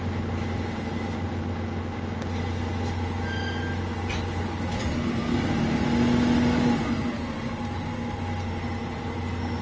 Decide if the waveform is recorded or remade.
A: recorded